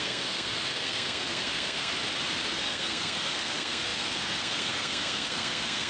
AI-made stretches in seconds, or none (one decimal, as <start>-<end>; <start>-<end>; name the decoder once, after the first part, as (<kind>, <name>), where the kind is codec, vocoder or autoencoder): 0.0-1.9 (codec, SNAC); 2.5-5.9